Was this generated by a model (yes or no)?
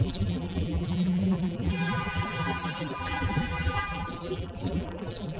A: yes